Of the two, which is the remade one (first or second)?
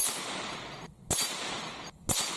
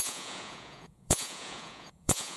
second